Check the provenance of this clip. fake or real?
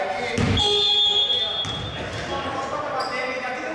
real